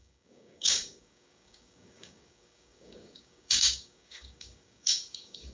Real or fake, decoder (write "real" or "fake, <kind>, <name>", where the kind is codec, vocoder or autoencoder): fake, codec, DAC